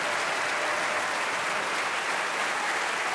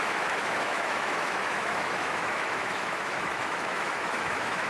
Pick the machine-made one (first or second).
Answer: second